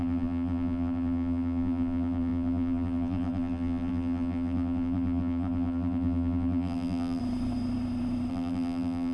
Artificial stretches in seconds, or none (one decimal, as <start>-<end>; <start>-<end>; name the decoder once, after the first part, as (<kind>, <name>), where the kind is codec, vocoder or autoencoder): 0.0-7.2 (vocoder, BigVGAN v2); 8.3-9.1